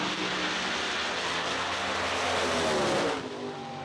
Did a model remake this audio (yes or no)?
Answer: no